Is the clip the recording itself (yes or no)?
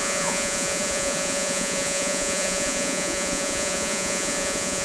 no